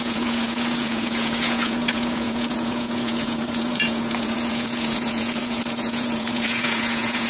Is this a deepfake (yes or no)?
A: yes